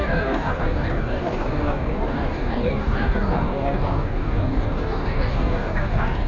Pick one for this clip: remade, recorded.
remade